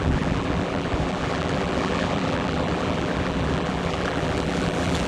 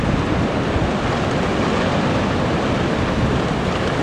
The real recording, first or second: second